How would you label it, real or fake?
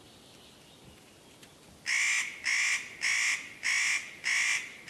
real